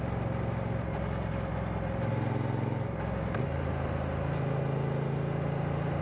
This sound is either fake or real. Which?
real